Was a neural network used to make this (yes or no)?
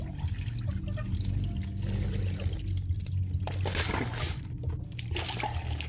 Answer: no